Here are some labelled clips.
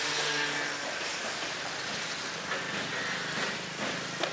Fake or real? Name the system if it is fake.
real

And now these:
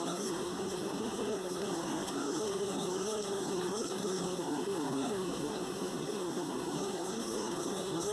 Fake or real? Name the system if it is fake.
fake, codec, SNAC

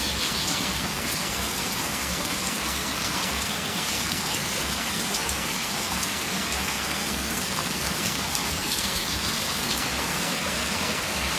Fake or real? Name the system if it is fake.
fake, codec, SNAC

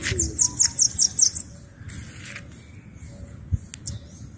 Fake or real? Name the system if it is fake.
real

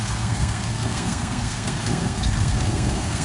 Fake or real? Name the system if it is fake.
fake, codec, SNAC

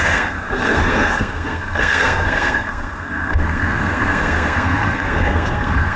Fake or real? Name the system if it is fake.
fake, codec, SNAC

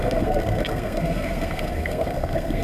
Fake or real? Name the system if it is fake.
fake, codec, SNAC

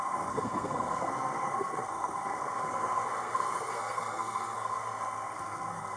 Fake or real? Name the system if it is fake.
fake, codec, SNAC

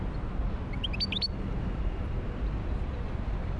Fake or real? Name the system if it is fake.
real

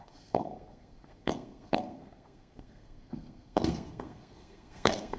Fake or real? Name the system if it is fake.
fake, codec, SNAC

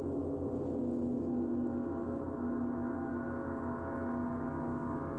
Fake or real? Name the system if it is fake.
real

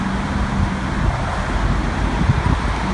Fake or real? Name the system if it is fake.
real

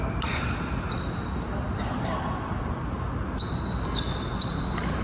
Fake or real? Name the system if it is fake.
real